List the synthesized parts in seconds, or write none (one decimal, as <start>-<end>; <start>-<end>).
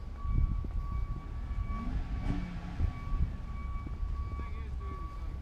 none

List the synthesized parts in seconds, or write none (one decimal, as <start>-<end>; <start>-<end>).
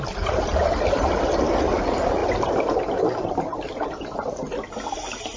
none